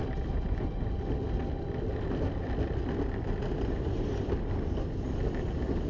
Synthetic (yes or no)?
no